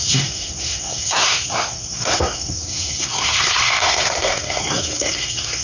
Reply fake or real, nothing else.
fake